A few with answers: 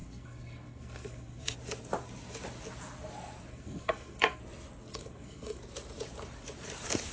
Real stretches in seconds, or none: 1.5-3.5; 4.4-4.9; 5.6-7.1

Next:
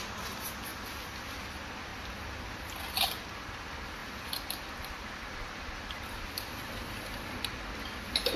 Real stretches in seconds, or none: 0.0-8.4

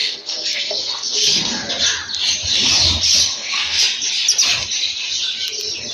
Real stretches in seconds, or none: 1.7-3.2; 3.8-5.9

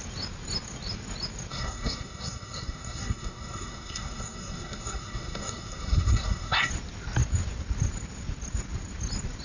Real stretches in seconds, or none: 0.0-1.5; 6.7-9.4